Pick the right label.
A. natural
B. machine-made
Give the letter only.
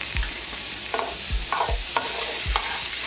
B